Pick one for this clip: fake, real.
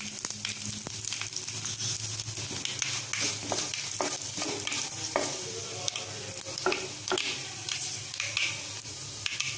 real